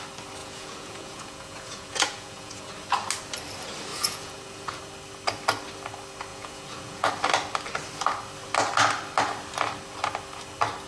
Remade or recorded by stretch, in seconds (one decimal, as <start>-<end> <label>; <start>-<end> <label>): 0.0-0.4 recorded; 0.4-2.7 remade; 2.7-3.9 recorded; 3.9-4.8 remade; 4.8-6.3 recorded; 6.3-7.1 remade; 7.1-10.9 recorded

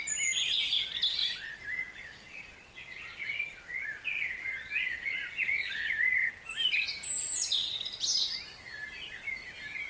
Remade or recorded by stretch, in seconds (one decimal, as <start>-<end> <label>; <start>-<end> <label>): 0.0-1.2 recorded; 1.2-6.3 remade; 6.3-9.9 recorded

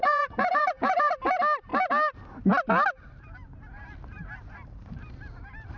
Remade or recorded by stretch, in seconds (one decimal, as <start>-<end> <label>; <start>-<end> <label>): 0.0-1.1 remade; 1.1-5.8 recorded

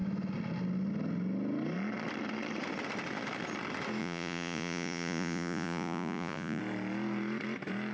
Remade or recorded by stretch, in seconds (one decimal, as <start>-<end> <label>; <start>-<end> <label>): 0.0-4.0 recorded; 4.0-6.6 remade; 6.6-7.9 recorded

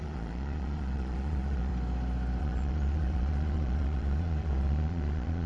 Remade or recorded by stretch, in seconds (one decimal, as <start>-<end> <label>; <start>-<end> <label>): 0.0-1.7 remade; 1.7-2.4 recorded; 2.4-5.5 remade